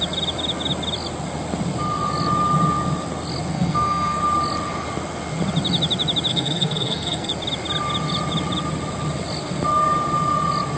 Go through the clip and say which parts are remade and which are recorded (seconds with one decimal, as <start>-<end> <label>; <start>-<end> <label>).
0.0-3.5 recorded; 3.5-4.2 remade; 4.2-6.3 recorded; 6.3-7.3 remade; 7.3-10.8 recorded